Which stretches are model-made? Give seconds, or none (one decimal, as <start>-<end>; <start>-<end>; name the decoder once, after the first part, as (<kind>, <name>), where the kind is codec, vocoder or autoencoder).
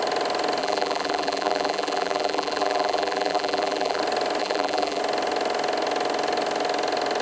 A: 0.6-4.0 (vocoder, BigVGAN v2); 4.4-5.0